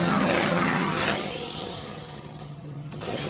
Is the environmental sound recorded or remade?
remade